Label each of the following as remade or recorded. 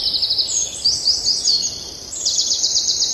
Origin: recorded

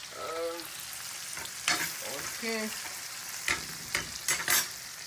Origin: recorded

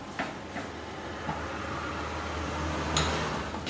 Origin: recorded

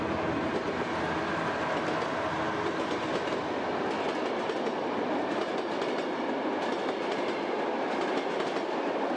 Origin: recorded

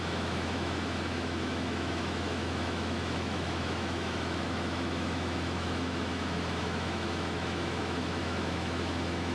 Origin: remade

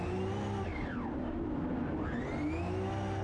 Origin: recorded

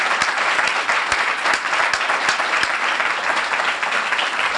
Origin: recorded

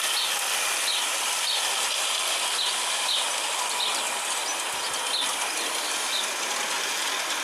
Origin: recorded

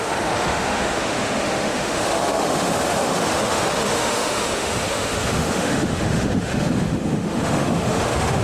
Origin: remade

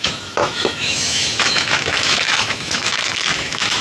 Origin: remade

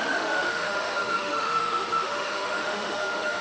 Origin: remade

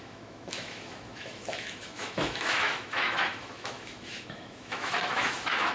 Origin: remade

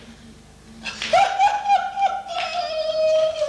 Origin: recorded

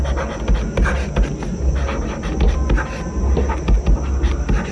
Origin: recorded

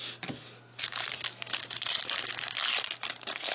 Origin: recorded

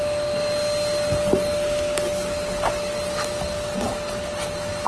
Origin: recorded